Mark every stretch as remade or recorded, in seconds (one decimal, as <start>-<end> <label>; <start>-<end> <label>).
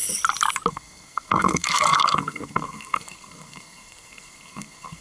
0.0-0.7 recorded; 0.7-5.0 remade